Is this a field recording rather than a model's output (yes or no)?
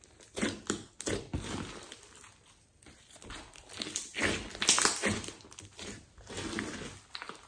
yes